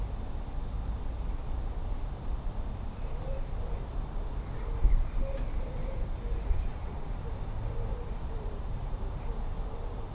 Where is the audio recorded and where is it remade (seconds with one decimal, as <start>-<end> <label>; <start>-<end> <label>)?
0.0-6.7 recorded; 6.7-7.2 remade; 7.2-7.9 recorded; 7.9-9.0 remade; 9.0-10.1 recorded